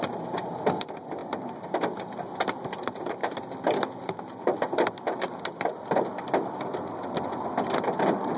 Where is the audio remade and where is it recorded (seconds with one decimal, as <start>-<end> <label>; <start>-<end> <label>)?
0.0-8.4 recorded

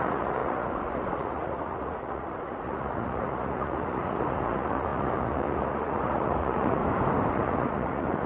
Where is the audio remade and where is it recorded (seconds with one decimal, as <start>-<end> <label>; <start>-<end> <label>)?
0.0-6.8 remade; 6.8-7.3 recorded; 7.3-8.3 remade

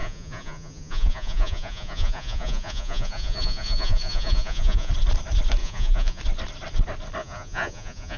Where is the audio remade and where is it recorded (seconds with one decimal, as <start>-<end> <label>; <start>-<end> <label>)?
0.0-4.9 remade; 4.9-5.6 recorded; 5.6-6.2 remade; 6.2-7.2 recorded; 7.2-8.2 remade

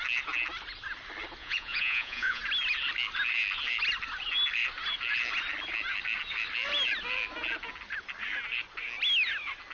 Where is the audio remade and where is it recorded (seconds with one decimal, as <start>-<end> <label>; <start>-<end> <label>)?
0.0-1.4 recorded; 1.4-2.4 remade; 2.4-9.7 recorded

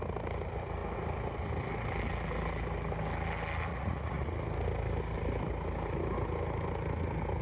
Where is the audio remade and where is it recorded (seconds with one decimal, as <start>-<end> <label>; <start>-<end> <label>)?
0.0-3.7 recorded; 3.7-4.3 remade; 4.3-7.4 recorded

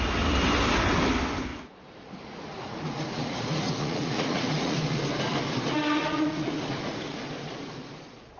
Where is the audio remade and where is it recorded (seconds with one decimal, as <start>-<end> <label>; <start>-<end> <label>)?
0.0-1.5 recorded; 1.5-5.0 remade; 5.0-6.0 recorded; 6.0-7.2 remade; 7.2-8.4 recorded